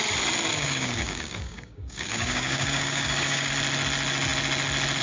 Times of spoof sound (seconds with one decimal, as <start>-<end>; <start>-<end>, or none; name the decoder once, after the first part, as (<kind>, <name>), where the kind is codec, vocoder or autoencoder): 0.5-3.5 (codec, DAC)